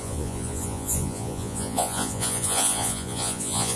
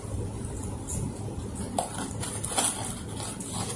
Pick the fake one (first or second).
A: first